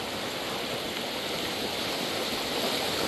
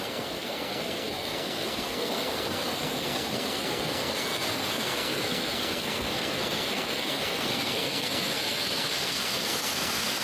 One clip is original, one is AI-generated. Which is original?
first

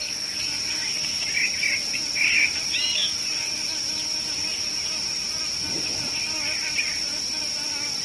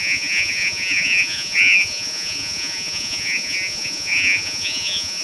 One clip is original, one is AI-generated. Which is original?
first